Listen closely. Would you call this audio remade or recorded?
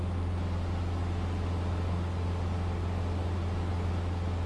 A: recorded